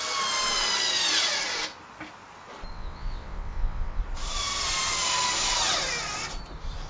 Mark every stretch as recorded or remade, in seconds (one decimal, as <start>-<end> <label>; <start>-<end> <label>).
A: 0.0-2.7 recorded; 2.7-4.0 remade; 4.0-6.9 recorded